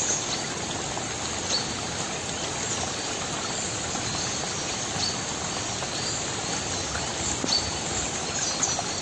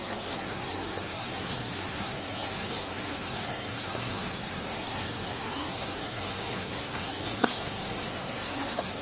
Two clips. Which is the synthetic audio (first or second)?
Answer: second